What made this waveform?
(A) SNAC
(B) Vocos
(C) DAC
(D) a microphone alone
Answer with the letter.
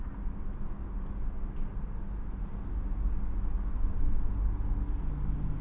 D